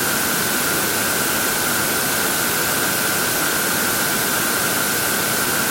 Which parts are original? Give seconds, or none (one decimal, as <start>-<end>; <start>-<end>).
0.0-5.7

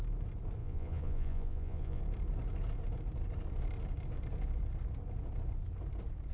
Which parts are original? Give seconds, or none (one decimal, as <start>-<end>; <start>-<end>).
0.0-0.6; 2.0-6.3